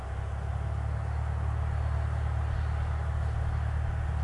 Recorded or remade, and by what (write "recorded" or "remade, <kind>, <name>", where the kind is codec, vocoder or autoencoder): recorded